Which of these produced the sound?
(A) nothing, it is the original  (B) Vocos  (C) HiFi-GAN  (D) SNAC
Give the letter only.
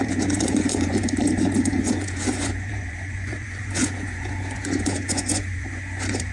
B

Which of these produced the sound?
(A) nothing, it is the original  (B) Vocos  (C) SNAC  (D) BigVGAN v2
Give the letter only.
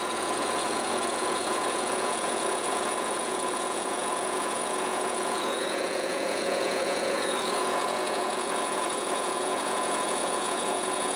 B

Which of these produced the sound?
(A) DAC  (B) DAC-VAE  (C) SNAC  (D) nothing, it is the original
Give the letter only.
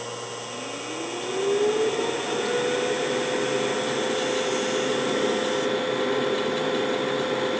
D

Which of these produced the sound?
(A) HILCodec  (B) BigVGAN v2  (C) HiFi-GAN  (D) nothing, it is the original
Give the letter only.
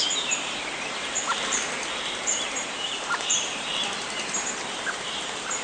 B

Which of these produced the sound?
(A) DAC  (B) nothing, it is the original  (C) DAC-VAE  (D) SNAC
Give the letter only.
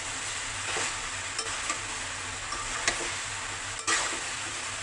B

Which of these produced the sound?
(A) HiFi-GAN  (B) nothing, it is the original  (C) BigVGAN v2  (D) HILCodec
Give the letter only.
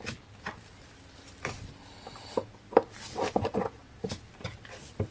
B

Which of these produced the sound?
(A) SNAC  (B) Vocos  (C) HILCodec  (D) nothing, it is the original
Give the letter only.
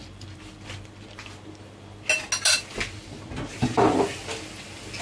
D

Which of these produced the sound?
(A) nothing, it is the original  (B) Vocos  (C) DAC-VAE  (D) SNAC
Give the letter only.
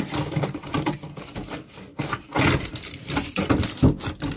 A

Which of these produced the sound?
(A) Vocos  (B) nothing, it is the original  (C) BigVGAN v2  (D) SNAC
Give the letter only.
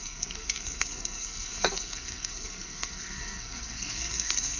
D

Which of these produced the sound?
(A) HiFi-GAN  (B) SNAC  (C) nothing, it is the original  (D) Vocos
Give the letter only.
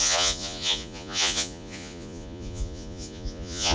D